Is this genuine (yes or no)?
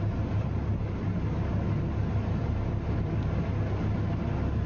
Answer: yes